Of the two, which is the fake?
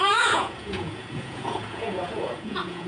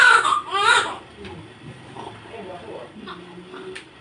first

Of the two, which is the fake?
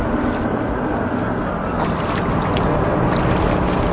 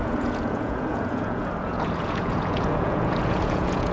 second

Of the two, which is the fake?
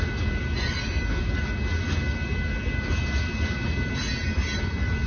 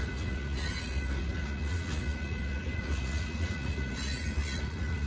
second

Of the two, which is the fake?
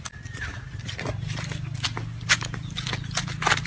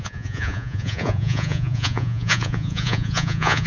second